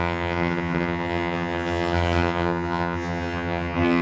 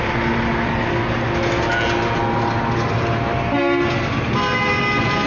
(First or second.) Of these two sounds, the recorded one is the second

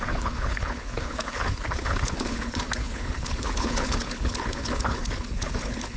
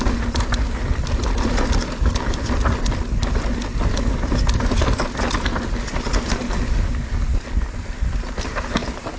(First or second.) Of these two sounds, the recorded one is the second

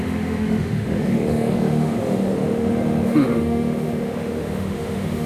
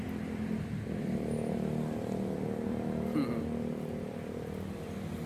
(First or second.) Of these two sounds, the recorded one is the second